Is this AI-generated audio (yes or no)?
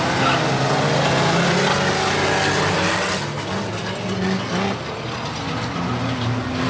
no